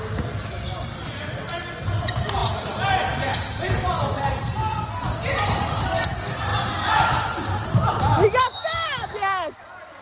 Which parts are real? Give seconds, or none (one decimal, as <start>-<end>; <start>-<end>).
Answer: 0.0-10.0